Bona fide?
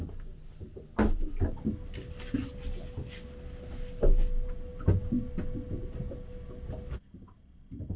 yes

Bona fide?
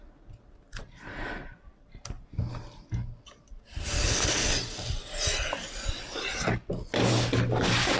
yes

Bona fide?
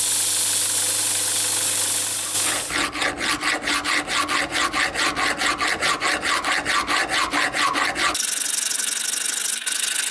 yes